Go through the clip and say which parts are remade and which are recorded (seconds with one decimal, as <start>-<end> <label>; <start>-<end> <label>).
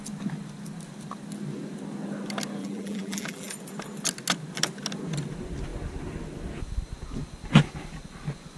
0.0-2.6 recorded; 2.6-3.5 remade; 3.5-8.6 recorded